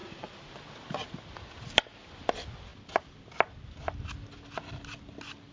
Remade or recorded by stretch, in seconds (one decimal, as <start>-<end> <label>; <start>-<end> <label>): 0.0-5.5 recorded